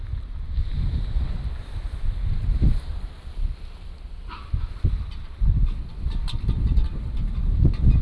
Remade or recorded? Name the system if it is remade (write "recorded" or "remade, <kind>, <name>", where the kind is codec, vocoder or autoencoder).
recorded